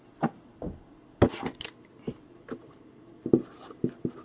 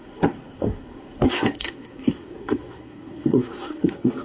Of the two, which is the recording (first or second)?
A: first